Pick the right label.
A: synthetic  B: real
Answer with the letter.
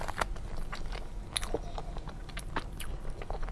B